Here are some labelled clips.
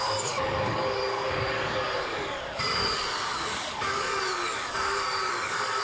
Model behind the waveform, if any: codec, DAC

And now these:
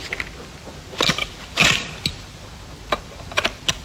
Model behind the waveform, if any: none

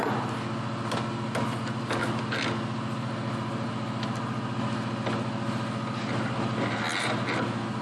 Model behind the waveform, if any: none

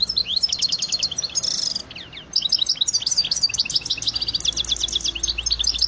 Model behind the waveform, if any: none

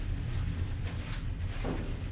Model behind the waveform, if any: none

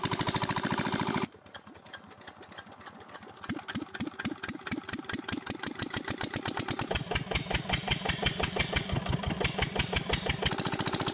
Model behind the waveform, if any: vocoder, BigVGAN v2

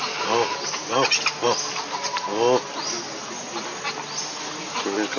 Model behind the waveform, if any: none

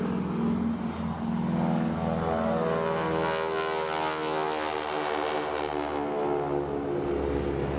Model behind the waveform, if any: none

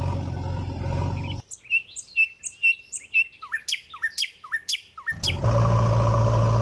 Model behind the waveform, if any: none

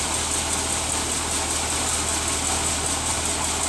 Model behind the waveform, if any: none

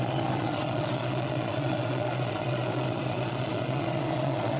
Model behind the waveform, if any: vocoder, Vocos